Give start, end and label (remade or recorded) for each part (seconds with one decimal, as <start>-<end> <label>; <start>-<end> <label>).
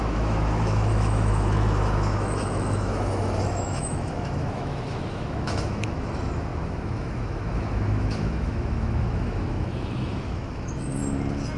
0.0-11.0 remade; 11.0-11.6 recorded